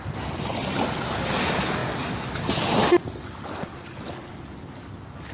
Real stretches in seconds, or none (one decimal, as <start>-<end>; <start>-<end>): 0.0-5.3